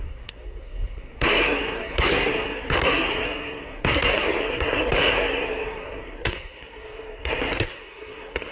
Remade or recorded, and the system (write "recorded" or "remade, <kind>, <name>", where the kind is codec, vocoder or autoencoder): remade, codec, SNAC